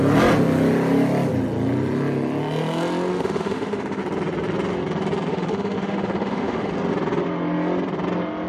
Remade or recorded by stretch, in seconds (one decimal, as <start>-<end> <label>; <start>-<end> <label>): 0.0-3.1 recorded; 3.1-4.0 remade; 4.0-5.3 recorded; 5.3-6.7 remade; 6.7-8.5 recorded